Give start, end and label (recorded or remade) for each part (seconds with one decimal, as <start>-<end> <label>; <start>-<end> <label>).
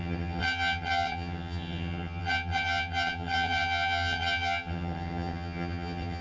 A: 0.0-6.2 remade